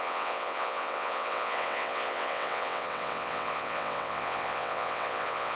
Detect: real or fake fake